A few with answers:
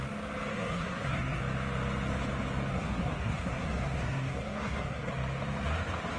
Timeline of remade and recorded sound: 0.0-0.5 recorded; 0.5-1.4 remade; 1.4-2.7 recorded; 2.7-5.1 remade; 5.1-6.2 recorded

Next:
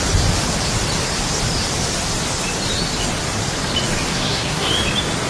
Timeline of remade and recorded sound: 0.0-4.1 recorded; 4.1-4.7 remade; 4.7-5.3 recorded